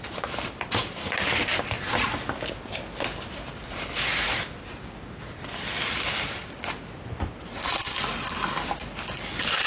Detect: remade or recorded recorded